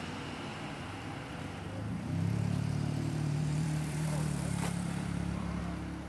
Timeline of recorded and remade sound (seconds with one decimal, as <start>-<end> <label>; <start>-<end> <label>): 0.0-0.5 recorded; 0.5-1.4 remade; 1.4-1.9 recorded; 1.9-5.6 remade; 5.6-6.1 recorded